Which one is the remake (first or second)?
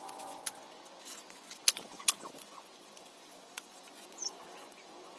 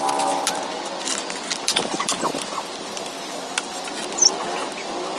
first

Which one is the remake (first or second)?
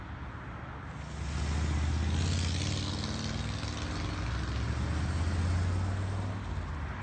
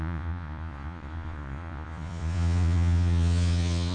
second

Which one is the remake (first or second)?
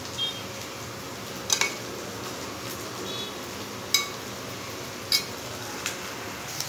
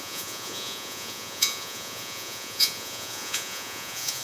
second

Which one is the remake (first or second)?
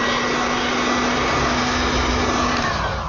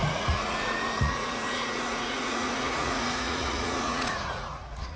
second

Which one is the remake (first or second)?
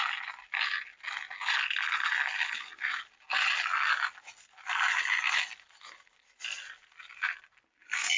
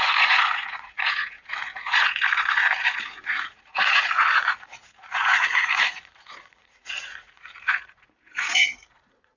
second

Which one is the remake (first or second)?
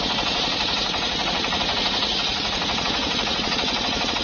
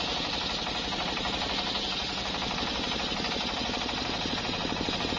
first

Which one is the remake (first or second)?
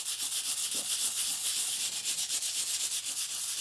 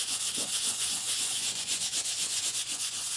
second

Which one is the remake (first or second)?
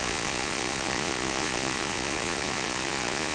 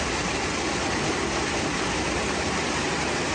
first